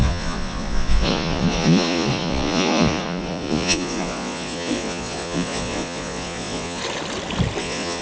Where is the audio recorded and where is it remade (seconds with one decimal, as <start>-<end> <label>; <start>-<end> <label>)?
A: 0.0-6.8 remade; 6.8-7.6 recorded; 7.6-8.0 remade